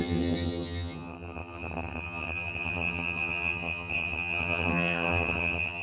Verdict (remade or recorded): remade